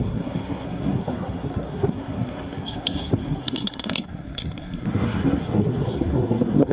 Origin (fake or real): fake